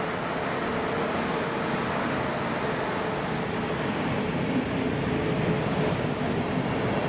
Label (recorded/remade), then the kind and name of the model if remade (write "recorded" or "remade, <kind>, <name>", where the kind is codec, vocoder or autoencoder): recorded